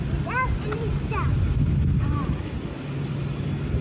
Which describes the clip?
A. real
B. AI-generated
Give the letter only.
A